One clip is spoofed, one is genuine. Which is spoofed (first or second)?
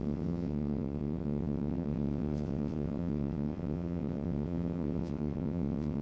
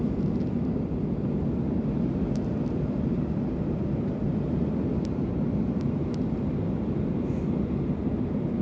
first